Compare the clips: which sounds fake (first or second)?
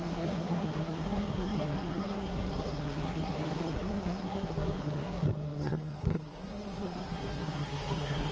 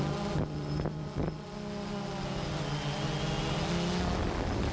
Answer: first